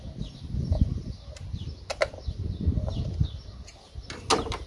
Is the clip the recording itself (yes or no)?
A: yes